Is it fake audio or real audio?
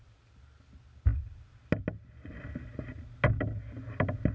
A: real